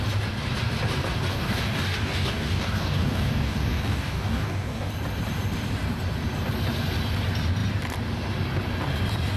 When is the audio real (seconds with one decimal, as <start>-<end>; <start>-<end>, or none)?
0.0-1.3; 4.9-9.4